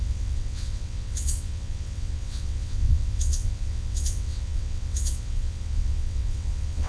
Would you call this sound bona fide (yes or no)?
no